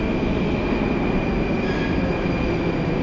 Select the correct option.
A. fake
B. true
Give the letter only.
B